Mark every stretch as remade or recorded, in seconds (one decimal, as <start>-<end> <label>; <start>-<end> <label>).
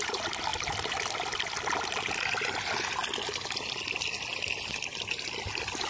0.0-5.9 recorded